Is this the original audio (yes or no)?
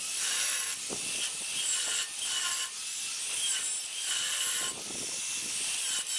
yes